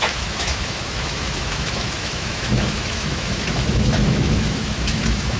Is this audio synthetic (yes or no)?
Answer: yes